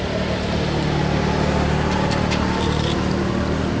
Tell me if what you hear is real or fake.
real